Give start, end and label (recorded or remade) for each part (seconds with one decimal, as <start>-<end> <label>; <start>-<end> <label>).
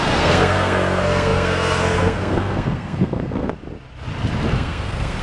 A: 0.0-3.5 remade; 3.5-4.5 recorded; 4.5-5.2 remade